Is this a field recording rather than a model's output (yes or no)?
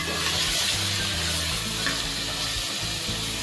yes